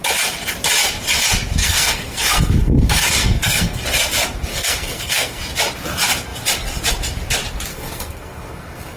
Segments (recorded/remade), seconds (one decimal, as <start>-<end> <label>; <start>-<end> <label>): 0.0-1.6 recorded; 1.6-3.8 remade; 3.8-4.5 recorded; 4.5-5.4 remade; 5.4-7.7 recorded; 7.7-9.0 remade

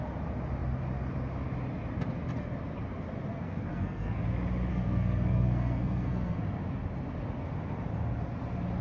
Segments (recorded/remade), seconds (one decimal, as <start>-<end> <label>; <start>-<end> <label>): 0.0-3.3 recorded; 3.3-4.2 remade; 4.2-4.7 recorded; 4.7-6.4 remade; 6.4-8.8 recorded

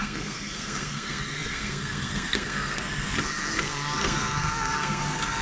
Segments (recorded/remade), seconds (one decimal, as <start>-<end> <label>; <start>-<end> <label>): 0.0-5.4 remade

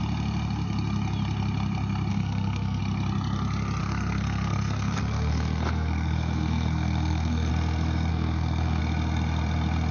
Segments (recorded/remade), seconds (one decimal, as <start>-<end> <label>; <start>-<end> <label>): 0.0-2.1 recorded; 2.1-2.8 remade; 2.8-3.8 recorded; 3.8-7.5 remade; 7.5-8.1 recorded; 8.1-8.8 remade; 8.8-9.9 recorded